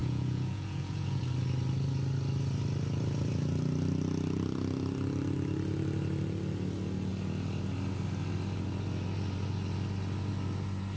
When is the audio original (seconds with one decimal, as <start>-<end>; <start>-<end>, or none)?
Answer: 1.2-11.0